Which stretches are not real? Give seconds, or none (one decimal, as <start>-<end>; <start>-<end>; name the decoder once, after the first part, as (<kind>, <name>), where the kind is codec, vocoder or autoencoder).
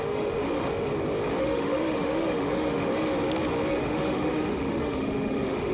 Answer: 0.0-0.9 (autoencoder, DAC-VAE); 1.4-2.9; 3.7-5.7